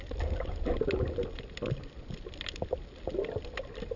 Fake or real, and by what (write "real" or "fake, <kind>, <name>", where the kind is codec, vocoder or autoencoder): real